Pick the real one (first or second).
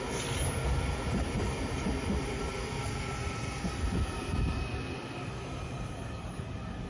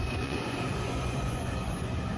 first